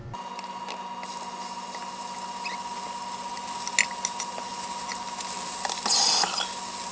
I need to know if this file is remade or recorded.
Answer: recorded